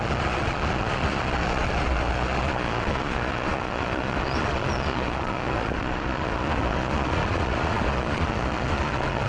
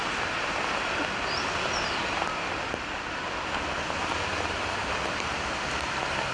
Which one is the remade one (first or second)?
first